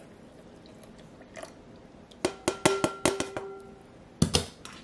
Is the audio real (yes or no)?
yes